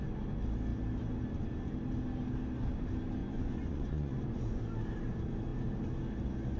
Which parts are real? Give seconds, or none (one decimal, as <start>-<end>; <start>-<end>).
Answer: 0.0-3.2; 4.6-6.6